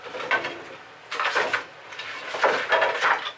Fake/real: real